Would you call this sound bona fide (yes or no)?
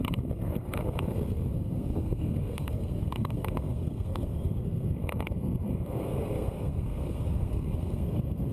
no